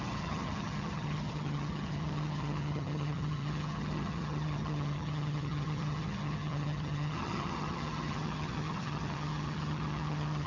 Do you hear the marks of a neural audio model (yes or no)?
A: yes